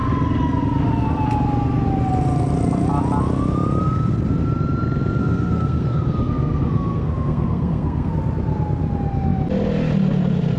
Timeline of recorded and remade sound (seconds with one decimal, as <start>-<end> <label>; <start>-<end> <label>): 0.0-5.2 recorded; 5.2-8.1 remade; 8.1-10.6 recorded